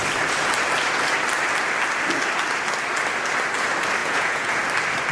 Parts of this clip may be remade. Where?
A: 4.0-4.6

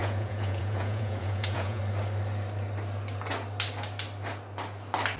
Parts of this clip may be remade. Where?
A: 0.0-1.8

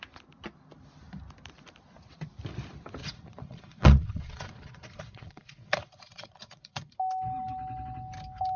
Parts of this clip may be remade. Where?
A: 3.0-6.9